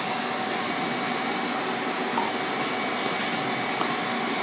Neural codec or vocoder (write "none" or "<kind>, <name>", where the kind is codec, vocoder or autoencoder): none